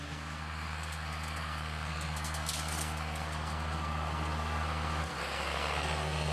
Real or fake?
fake